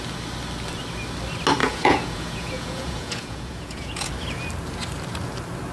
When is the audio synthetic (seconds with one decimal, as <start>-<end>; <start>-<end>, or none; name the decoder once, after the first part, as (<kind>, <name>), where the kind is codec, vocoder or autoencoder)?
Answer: 1.6-4.1 (vocoder, Vocos)